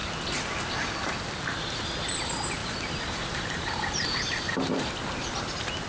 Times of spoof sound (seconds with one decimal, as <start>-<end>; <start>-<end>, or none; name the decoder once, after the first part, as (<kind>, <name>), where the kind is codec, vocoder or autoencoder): 2.6-4.9 (vocoder, BigVGAN v2)